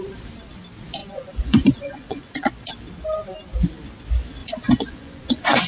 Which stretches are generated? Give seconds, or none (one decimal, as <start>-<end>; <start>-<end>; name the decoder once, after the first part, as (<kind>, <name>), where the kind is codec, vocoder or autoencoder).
1.0-2.5 (vocoder, Vocos); 4.4-5.7